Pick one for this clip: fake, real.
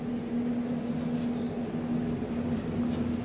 real